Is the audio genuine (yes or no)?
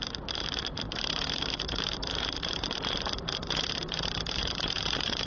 no